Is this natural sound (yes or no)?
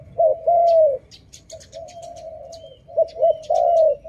yes